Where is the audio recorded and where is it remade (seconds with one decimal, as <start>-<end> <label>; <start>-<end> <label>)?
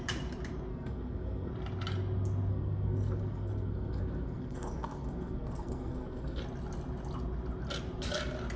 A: 0.0-0.7 recorded; 0.7-1.5 remade; 1.5-2.5 recorded; 2.5-6.4 remade; 6.4-8.6 recorded